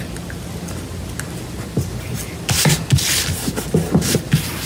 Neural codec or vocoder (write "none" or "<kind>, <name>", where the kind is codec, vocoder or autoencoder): none